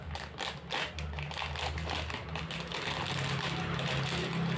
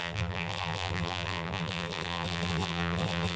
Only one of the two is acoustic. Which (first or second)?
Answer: first